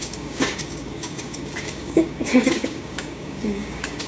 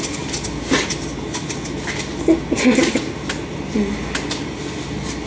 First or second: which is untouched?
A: second